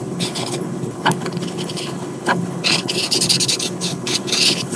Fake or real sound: fake